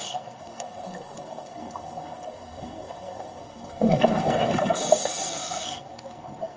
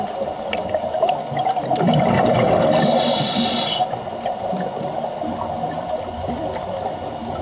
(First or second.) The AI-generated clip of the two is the first